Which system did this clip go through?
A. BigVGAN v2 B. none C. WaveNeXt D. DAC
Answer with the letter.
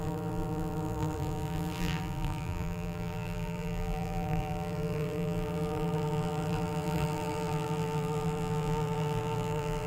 A